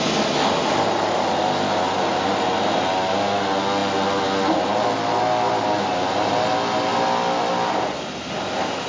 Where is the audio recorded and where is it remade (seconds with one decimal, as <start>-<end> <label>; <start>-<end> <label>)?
0.0-8.9 recorded